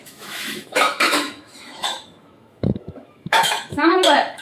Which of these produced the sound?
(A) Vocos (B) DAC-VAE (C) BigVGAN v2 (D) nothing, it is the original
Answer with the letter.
B